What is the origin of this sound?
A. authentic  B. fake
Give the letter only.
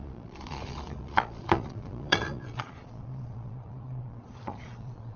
B